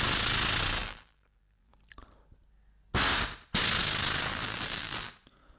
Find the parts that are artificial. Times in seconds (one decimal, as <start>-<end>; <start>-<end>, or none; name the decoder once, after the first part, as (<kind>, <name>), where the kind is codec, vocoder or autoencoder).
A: 0.8-1.7 (vocoder, BigVGAN v2); 4.3-5.1